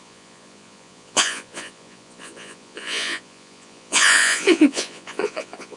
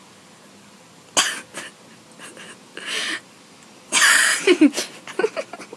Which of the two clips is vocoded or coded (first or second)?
first